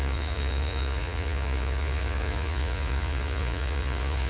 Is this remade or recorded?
remade